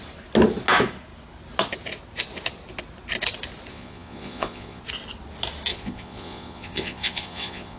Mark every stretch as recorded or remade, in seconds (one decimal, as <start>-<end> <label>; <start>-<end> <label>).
0.0-3.7 recorded; 3.7-4.8 remade; 4.8-5.7 recorded; 5.7-7.8 remade